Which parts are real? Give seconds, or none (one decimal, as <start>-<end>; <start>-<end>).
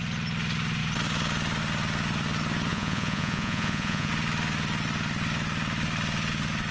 0.0-2.7; 4.1-6.7